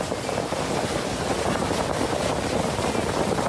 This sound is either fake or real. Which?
real